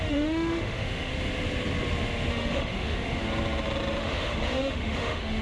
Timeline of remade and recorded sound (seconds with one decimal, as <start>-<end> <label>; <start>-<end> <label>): 0.0-1.1 remade; 1.1-2.3 recorded; 2.3-3.2 remade; 3.2-4.0 recorded; 4.0-5.4 remade